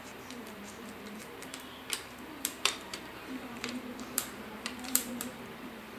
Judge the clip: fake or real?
fake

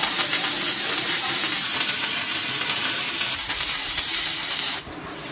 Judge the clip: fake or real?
fake